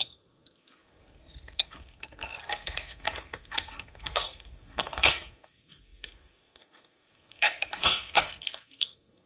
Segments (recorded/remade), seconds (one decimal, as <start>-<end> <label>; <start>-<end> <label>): 0.0-9.3 remade